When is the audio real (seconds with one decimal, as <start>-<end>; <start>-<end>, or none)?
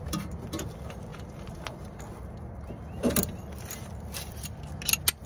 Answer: 0.0-5.3